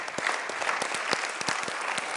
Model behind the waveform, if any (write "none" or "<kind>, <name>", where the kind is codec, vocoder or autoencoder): none